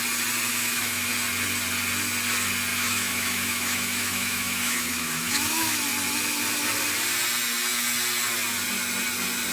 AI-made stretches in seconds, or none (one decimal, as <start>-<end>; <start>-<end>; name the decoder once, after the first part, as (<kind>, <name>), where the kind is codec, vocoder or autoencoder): 0.5-1.1 (autoencoder, DAC-VAE); 2.7-5.8